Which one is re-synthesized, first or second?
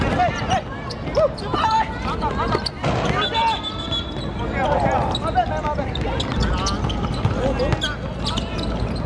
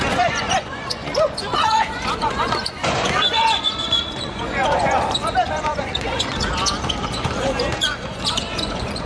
second